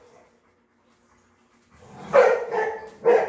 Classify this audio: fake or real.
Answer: real